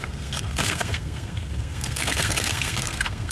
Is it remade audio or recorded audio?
remade